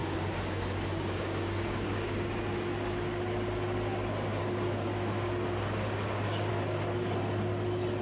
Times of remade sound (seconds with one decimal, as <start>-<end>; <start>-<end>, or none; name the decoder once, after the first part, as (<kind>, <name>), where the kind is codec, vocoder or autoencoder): 0.0-2.3 (codec, DAC); 4.4-6.5